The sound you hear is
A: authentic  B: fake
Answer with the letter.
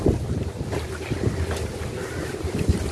A